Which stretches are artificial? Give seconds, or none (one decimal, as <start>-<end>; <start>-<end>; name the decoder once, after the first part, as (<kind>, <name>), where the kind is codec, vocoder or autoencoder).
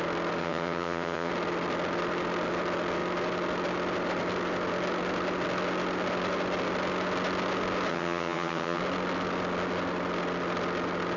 0.4-1.3 (vocoder, HiFi-GAN); 7.9-8.8